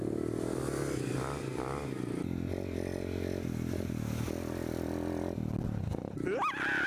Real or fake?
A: real